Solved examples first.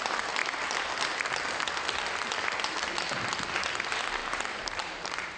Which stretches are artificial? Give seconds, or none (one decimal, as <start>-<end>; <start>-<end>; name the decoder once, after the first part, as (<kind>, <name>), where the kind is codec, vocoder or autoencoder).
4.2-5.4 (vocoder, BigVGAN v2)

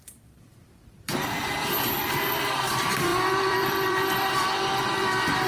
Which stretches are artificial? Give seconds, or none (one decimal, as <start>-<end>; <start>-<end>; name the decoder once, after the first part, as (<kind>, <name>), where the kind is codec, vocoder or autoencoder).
0.0-5.5 (vocoder, BigVGAN v2)

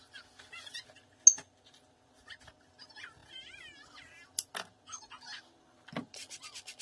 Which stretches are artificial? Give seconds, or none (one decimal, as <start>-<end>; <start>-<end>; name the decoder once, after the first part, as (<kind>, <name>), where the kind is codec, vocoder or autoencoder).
5.3-5.9 (vocoder, BigVGAN v2)

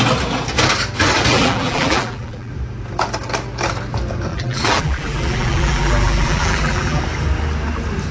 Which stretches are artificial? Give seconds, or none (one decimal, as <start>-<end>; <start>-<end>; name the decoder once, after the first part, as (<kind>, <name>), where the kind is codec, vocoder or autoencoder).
1.3-2.5 (vocoder, BigVGAN v2); 4.3-7.0

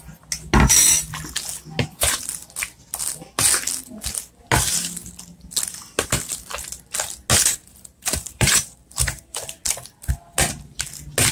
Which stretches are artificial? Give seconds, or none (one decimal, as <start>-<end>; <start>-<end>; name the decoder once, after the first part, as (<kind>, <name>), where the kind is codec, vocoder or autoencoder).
7.6-9.4 (vocoder, BigVGAN v2)

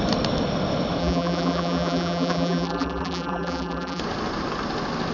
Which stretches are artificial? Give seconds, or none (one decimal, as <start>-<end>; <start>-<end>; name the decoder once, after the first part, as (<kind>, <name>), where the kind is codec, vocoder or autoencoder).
1.0-4.0 (vocoder, BigVGAN v2)